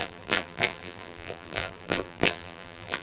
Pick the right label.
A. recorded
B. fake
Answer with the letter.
B